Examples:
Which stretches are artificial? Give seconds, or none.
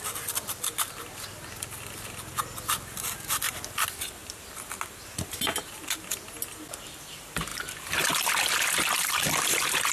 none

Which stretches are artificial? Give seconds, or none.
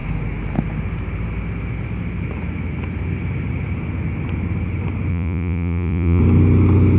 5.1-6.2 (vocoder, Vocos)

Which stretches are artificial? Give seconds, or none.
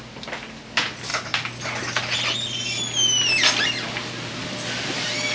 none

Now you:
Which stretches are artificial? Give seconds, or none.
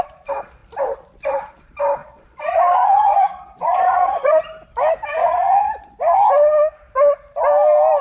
2.0-4.4 (vocoder, Vocos); 5.2-5.9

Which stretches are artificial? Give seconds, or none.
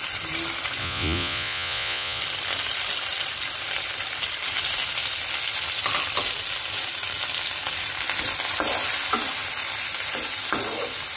0.8-2.2 (vocoder, Vocos)